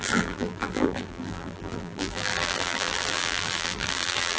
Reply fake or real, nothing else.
fake